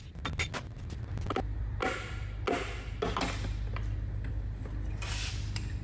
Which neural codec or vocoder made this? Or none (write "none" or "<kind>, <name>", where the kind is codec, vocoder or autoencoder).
none